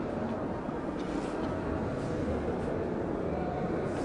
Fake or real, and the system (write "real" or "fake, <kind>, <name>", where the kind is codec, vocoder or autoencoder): real